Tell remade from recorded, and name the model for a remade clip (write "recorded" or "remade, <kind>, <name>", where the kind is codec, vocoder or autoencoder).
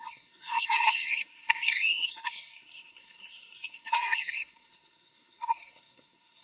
remade, codec, SNAC